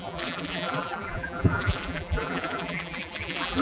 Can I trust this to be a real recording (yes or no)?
no